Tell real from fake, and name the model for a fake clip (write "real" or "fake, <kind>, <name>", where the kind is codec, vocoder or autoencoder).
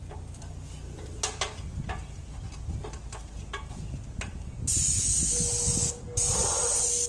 real